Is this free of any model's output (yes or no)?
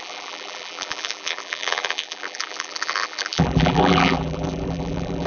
no